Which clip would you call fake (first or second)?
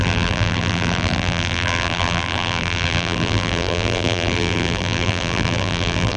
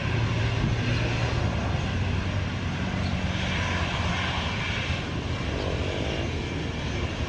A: first